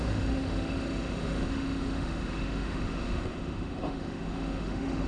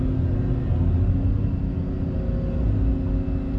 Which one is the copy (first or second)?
first